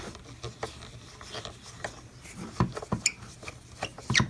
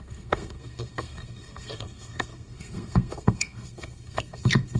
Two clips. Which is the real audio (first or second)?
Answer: first